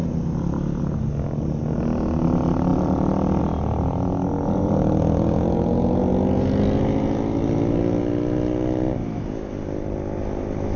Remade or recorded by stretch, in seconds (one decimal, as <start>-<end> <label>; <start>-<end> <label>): 0.0-10.8 recorded